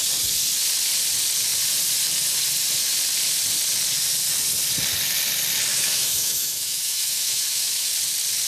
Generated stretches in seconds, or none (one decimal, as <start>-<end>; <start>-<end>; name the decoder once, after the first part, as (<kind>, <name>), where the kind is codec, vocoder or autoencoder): 5.7-7.9 (autoencoder, DAC-VAE)